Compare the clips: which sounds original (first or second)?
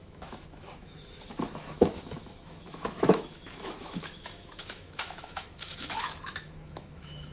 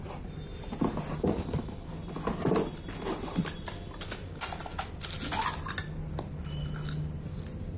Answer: second